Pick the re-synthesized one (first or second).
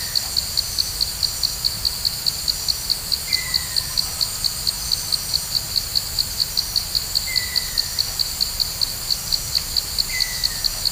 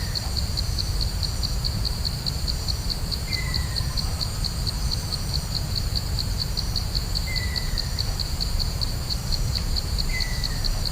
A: second